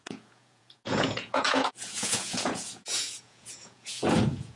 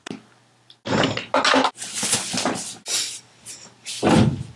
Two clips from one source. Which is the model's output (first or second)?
first